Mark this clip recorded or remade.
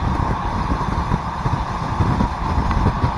recorded